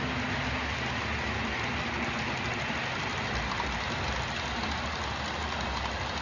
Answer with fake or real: real